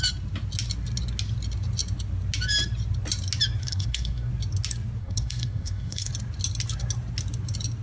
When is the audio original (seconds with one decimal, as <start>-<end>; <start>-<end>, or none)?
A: 0.0-3.6; 4.3-5.0; 6.1-7.8